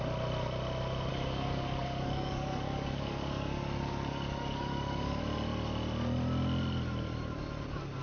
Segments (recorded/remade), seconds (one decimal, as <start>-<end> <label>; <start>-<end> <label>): 0.0-1.1 recorded; 1.1-5.2 remade; 5.2-8.0 recorded